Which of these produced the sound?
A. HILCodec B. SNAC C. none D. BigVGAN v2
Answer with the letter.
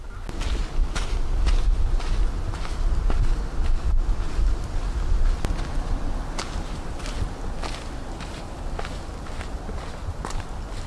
C